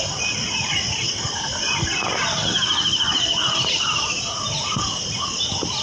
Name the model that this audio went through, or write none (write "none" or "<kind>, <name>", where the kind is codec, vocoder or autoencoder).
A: none